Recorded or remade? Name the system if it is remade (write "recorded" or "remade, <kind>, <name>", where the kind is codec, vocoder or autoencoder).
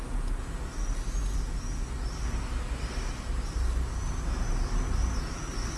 recorded